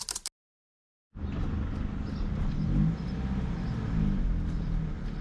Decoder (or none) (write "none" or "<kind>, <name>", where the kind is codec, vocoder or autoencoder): none